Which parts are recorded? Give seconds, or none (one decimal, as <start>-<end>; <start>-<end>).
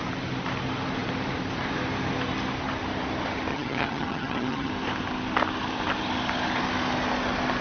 0.0-3.5; 4.7-7.6